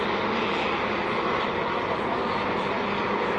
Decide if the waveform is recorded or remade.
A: recorded